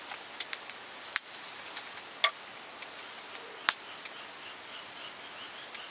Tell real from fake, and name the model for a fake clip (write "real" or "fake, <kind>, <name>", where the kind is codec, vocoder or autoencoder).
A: real